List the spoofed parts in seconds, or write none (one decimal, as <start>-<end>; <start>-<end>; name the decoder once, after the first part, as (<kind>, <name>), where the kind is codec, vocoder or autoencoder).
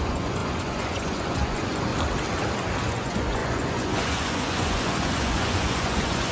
0.0-1.9 (vocoder, Vocos); 2.9-6.3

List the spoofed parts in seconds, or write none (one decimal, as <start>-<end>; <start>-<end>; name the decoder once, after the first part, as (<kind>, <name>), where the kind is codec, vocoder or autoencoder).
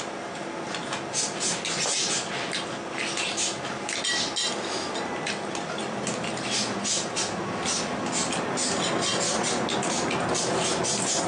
none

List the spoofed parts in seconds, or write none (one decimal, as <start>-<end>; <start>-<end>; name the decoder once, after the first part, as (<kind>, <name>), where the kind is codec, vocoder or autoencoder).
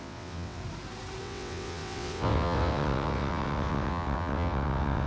0.0-0.6 (vocoder, WaveNeXt); 1.2-5.1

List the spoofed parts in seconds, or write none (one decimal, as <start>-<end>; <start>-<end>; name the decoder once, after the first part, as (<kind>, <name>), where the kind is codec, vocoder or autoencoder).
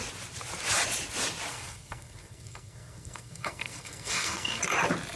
1.5-4.6 (codec, SNAC)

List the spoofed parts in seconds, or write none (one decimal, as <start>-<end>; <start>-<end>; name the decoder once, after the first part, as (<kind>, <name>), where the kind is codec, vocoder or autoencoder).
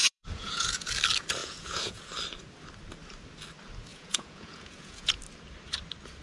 0.0-0.9 (vocoder, Vocos); 1.4-2.1; 3.9-5.2